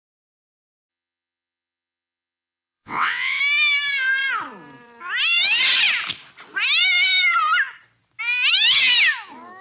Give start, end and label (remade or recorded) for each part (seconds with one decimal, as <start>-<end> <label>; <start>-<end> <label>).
0.0-0.9 recorded; 0.9-3.4 remade; 3.4-9.6 recorded